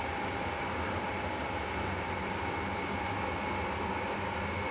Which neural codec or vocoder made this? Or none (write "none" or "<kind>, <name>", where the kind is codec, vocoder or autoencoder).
none